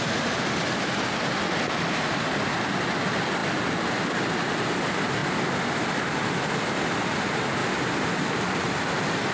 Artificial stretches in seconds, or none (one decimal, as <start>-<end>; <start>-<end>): none